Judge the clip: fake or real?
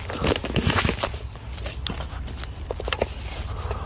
real